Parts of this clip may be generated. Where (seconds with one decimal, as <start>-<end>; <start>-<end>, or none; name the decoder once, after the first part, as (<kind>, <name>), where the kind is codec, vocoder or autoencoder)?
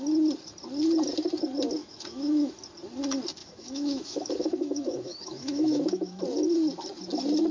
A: 1.8-2.5 (autoencoder, DAC-VAE); 3.4-6.2